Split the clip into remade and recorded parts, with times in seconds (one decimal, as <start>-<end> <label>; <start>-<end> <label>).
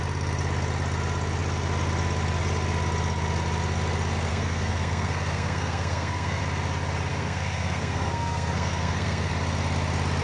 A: 0.0-4.3 recorded; 4.3-6.4 remade; 6.4-7.1 recorded; 7.1-9.3 remade; 9.3-10.2 recorded